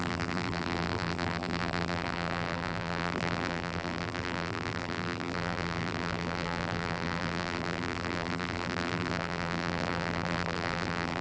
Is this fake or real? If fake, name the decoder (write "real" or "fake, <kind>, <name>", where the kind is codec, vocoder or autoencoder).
fake, vocoder, BigVGAN v2